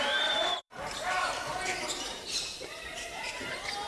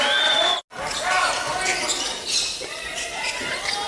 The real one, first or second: second